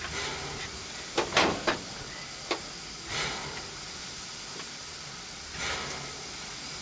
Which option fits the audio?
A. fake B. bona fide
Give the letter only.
B